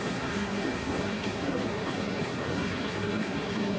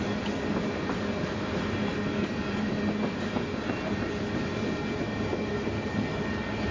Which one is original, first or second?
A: second